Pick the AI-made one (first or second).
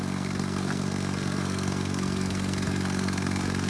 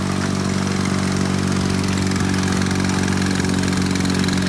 first